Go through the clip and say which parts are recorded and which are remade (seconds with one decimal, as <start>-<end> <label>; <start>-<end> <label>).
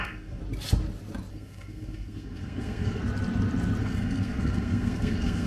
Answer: 0.0-0.4 remade; 0.4-1.3 recorded; 1.3-3.0 remade; 3.0-3.8 recorded; 3.8-5.5 remade